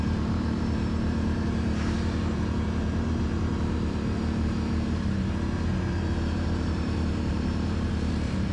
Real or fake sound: fake